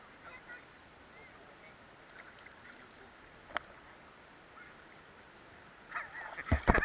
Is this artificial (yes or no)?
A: no